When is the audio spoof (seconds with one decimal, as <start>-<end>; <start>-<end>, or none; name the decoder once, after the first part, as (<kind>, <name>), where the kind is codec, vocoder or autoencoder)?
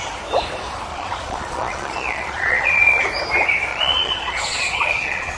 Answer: 0.9-3.0 (vocoder, Vocos); 3.7-5.4